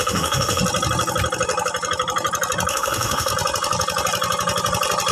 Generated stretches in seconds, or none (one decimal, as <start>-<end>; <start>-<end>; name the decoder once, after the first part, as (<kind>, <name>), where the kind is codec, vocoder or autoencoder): 0.0-0.6 (autoencoder, DAC-VAE); 2.7-3.3